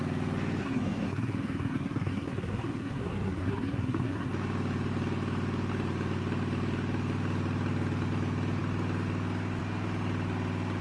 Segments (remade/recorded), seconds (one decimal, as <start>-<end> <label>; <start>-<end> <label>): 0.0-0.6 recorded; 0.6-4.3 remade; 4.3-10.8 recorded